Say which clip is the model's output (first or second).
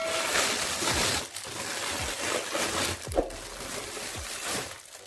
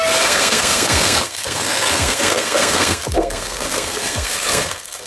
second